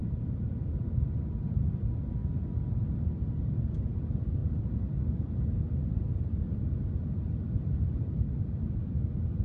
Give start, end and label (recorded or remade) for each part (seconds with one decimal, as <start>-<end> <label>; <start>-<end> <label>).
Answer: 0.0-4.4 recorded; 4.4-5.0 remade; 5.0-9.4 recorded